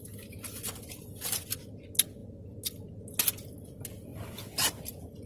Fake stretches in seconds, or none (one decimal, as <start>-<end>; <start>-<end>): none